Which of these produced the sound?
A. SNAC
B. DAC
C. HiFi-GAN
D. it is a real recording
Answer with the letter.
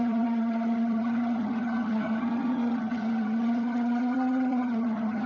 C